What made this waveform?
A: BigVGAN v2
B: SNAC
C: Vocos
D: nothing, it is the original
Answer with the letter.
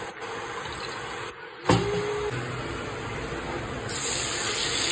D